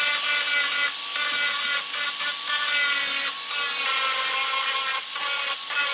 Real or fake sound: real